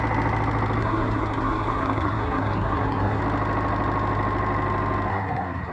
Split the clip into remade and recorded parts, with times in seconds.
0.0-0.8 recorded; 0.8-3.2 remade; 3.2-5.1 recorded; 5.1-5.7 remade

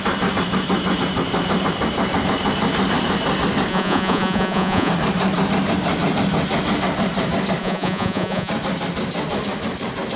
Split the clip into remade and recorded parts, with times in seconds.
0.0-3.7 recorded; 3.7-4.9 remade; 4.9-7.6 recorded; 7.6-8.5 remade; 8.5-10.2 recorded

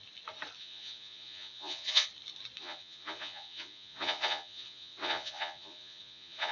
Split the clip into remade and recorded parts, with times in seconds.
0.0-0.6 recorded; 0.6-2.1 remade; 2.1-2.6 recorded; 2.6-6.5 remade

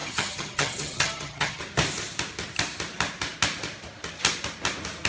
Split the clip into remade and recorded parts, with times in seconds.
0.0-1.6 remade; 1.6-5.1 recorded

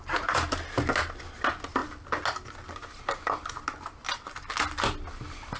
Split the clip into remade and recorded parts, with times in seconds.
0.0-5.6 recorded

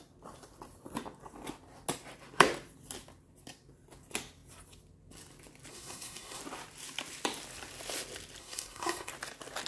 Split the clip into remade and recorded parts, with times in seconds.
0.0-5.7 recorded; 5.7-6.4 remade; 6.4-8.4 recorded; 8.4-9.1 remade; 9.1-9.7 recorded